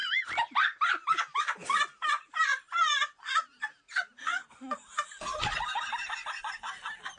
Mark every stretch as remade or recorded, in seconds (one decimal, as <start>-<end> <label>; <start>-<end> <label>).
0.0-7.2 recorded